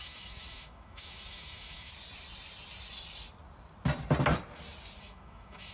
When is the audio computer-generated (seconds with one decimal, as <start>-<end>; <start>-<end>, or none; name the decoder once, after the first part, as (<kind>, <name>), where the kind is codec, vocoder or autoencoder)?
0.0-1.9 (autoencoder, DAC-VAE); 5.0-5.7